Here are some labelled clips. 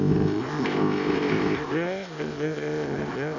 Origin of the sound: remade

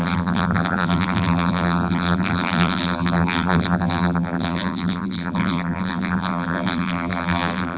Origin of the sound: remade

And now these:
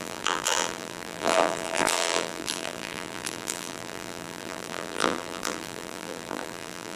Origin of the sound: remade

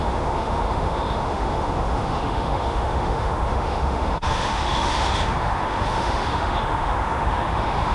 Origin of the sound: remade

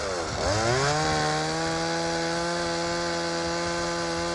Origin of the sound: recorded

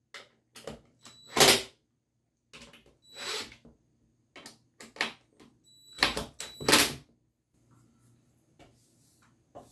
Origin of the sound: recorded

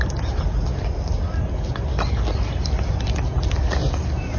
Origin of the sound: recorded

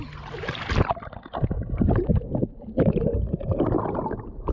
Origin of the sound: recorded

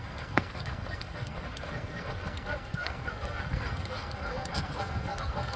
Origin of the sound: remade